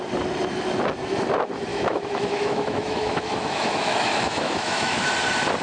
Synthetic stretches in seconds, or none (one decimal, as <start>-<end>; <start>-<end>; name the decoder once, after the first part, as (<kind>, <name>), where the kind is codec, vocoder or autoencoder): 1.7-5.1 (autoencoder, DAC-VAE)